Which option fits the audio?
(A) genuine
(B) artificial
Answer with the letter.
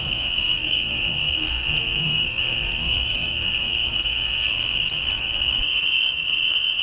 B